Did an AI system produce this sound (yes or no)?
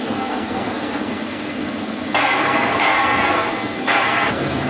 yes